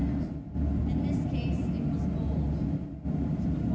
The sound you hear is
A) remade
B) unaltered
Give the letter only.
B